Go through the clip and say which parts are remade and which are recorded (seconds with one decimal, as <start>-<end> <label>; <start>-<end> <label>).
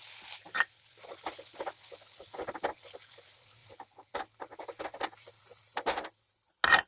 0.0-6.9 recorded